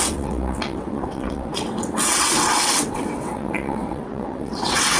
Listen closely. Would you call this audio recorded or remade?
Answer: remade